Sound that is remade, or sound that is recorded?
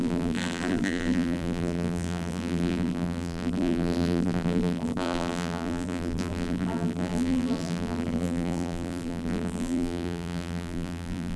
remade